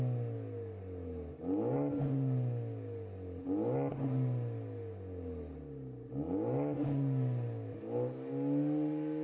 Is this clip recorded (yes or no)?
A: yes